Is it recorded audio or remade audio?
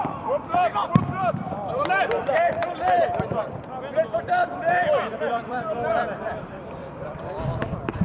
remade